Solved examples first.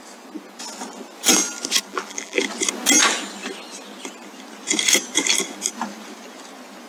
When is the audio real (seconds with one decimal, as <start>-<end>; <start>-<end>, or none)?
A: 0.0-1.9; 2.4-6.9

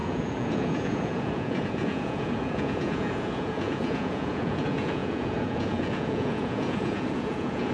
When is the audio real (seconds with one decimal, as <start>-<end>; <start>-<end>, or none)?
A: none

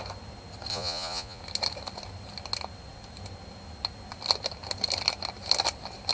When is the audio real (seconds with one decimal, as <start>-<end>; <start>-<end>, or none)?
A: 0.0-0.7; 1.4-6.1